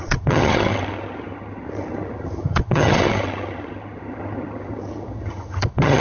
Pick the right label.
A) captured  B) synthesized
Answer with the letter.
B